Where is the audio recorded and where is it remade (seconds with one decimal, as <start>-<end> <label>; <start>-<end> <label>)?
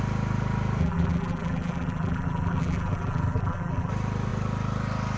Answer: 0.0-0.8 recorded; 0.8-3.9 remade; 3.9-5.2 recorded